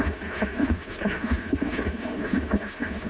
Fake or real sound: fake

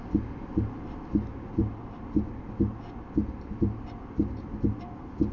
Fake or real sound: real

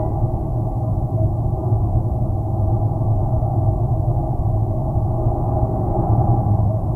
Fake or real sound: fake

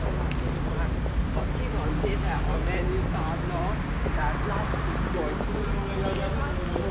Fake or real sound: real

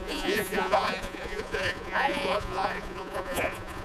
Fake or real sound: fake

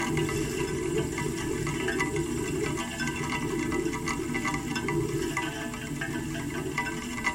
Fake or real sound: real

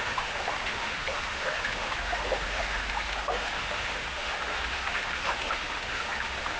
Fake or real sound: fake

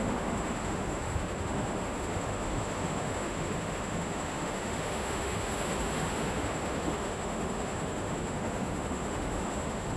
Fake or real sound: fake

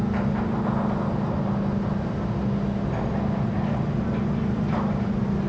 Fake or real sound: real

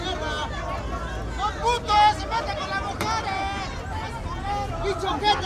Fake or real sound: real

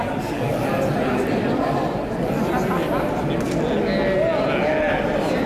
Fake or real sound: real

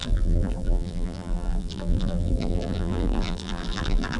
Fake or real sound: fake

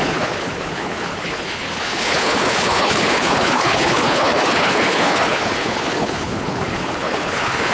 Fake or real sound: fake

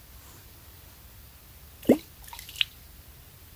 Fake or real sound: real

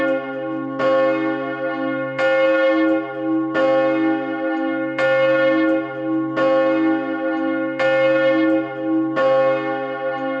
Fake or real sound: real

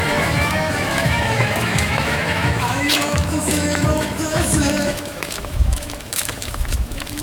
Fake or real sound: fake